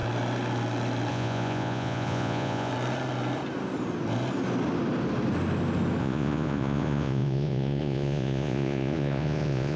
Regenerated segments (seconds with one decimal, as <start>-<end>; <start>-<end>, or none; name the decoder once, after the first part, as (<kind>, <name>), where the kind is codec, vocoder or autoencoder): 1.1-2.7 (vocoder, Vocos); 6.0-9.8